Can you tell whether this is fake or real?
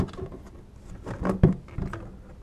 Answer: real